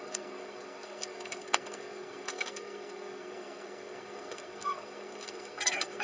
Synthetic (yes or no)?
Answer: yes